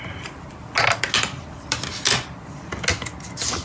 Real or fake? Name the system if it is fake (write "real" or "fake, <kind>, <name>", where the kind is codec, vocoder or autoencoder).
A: real